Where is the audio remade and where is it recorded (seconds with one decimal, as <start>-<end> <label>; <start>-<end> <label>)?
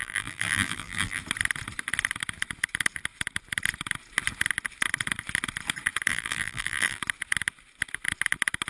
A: 0.0-1.2 remade; 1.2-6.1 recorded; 6.1-7.0 remade; 7.0-8.7 recorded